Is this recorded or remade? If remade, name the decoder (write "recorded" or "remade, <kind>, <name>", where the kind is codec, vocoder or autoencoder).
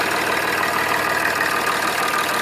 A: recorded